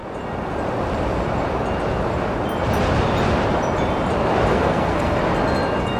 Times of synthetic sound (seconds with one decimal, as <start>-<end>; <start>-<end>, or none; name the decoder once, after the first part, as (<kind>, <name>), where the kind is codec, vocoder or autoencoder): 4.5-5.2 (codec, SNAC)